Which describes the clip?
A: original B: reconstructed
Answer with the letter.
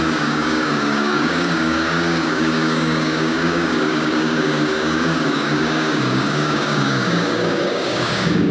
B